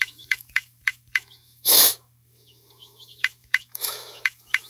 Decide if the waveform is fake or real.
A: fake